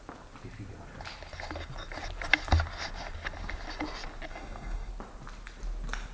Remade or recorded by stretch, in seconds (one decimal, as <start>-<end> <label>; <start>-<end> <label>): 0.0-4.3 recorded; 4.3-4.9 remade; 4.9-6.1 recorded